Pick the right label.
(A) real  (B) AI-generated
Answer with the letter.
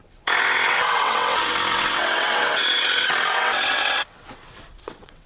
B